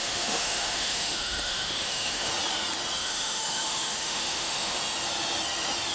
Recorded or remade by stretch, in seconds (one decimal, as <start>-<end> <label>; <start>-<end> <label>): 0.0-2.3 remade; 2.3-3.0 recorded; 3.0-4.8 remade; 4.8-5.9 recorded